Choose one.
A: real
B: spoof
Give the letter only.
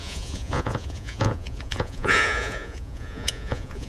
B